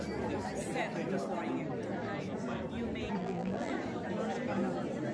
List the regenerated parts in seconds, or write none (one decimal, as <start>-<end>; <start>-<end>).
3.2-3.7